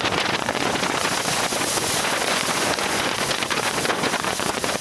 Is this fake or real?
fake